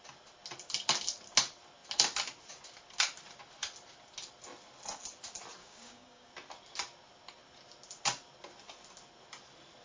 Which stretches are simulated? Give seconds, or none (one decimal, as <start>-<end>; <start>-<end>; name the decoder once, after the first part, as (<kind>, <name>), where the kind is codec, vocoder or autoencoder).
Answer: 5.6-6.3 (codec, DAC)